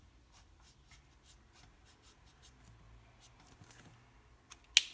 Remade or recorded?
recorded